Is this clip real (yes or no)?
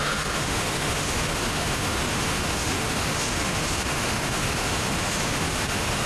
no